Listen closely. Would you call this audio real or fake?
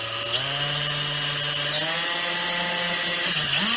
real